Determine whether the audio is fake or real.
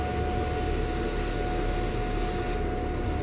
real